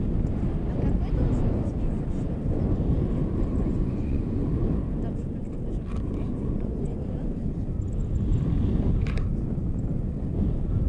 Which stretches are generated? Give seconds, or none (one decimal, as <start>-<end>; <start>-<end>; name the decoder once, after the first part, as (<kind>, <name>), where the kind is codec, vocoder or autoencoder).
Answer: 3.6-4.5 (vocoder, Vocos); 6.3-7.0